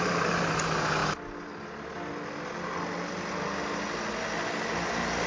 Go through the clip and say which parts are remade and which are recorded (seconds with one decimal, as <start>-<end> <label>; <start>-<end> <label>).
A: 0.0-5.3 recorded